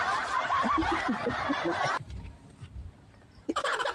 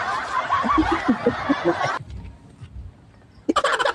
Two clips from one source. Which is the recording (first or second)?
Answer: second